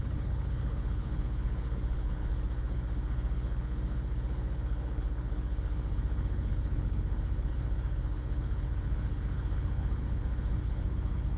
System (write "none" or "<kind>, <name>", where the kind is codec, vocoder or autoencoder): codec, HILCodec